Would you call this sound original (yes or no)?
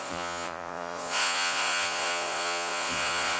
no